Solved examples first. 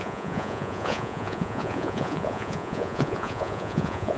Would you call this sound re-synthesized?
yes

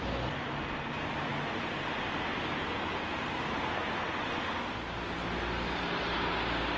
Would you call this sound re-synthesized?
no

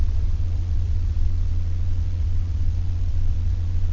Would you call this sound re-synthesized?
yes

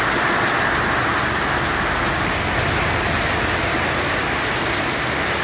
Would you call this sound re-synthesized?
no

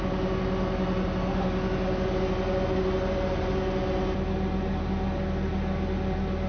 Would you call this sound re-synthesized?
no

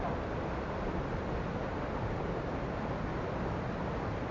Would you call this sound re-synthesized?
no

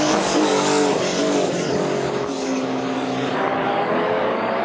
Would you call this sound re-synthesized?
yes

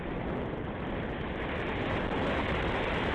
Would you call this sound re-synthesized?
no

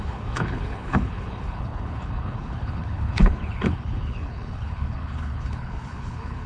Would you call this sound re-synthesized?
yes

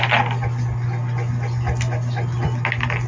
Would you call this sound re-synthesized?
no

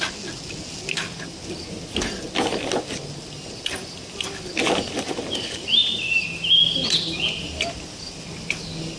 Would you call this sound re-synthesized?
no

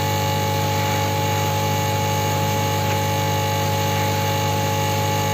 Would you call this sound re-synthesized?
yes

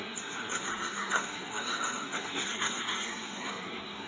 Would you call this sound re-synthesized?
yes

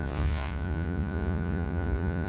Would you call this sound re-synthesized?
yes